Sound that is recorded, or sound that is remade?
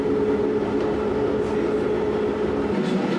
recorded